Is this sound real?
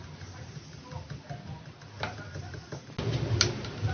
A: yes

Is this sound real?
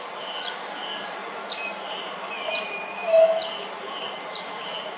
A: yes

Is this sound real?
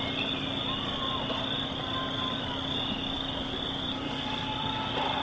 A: yes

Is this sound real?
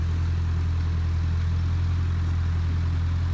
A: yes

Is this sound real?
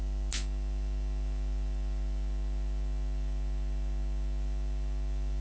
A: yes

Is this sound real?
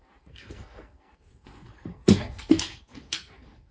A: no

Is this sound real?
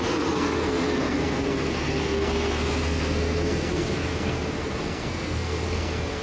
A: no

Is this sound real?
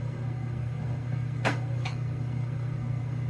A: no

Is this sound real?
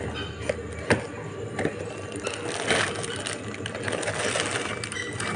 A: yes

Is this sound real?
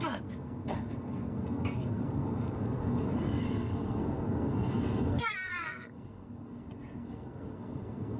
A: no